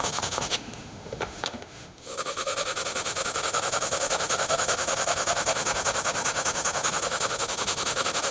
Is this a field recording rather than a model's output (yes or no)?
no